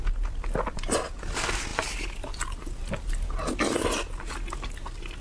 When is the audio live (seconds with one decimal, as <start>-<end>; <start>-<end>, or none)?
0.0-5.2